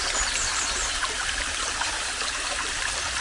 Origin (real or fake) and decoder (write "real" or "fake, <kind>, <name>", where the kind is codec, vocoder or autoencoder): fake, vocoder, BigVGAN v2